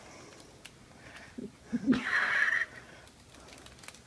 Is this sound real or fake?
real